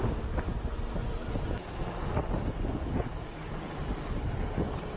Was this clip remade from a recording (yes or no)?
no